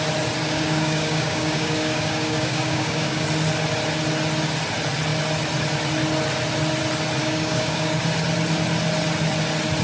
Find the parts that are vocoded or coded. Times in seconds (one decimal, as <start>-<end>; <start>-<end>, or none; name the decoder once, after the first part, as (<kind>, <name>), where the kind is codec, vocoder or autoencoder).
0.4-3.2 (codec, DAC); 7.2-8.0